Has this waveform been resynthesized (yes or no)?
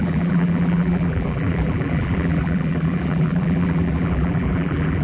yes